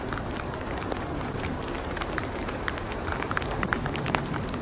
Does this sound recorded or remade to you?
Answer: remade